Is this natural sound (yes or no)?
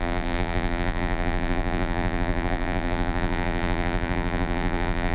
no